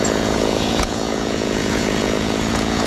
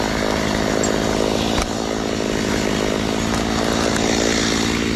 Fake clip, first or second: first